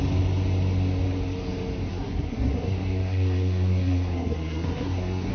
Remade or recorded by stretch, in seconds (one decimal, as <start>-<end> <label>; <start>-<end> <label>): 0.0-1.9 recorded; 1.9-5.3 remade